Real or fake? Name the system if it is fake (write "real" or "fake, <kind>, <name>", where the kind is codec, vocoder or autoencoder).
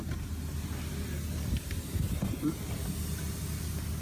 real